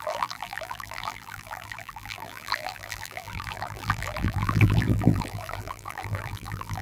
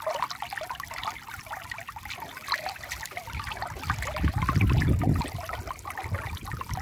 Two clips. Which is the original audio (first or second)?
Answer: second